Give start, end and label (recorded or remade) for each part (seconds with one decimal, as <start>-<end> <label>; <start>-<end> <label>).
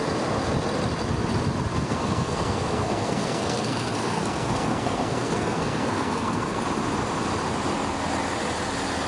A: 0.0-1.7 recorded; 1.7-6.6 remade; 6.6-9.1 recorded